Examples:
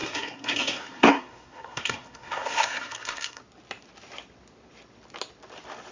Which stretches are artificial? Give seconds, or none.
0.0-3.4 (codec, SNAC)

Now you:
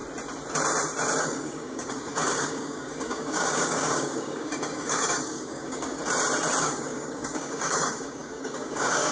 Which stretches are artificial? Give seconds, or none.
1.2-6.0 (codec, DAC); 6.6-9.1

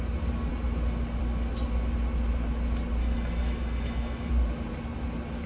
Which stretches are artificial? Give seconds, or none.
3.0-4.3 (autoencoder, DAC-VAE)

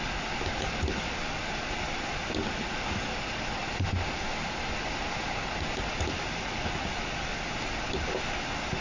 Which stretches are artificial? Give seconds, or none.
none

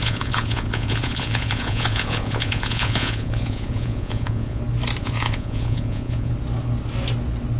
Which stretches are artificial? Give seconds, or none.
0.0-4.6 (vocoder, Vocos); 5.0-6.3

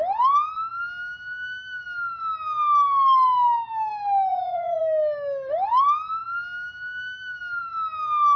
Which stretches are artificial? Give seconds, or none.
4.3-4.8 (vocoder, Vocos)